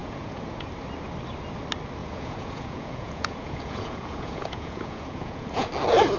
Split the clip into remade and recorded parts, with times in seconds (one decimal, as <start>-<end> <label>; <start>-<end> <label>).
0.0-0.7 remade; 0.7-2.0 recorded; 2.0-5.7 remade; 5.7-6.2 recorded